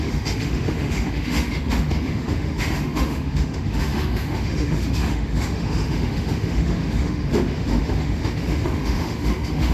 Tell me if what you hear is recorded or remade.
remade